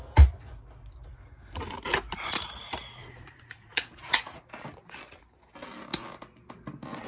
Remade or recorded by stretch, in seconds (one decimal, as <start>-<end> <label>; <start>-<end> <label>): 0.0-3.0 recorded; 3.0-4.4 remade; 4.4-7.1 recorded